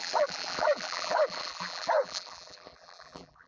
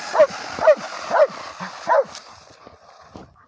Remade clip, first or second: first